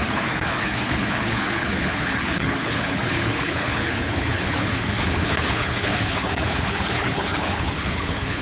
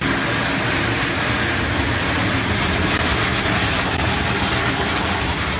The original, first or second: second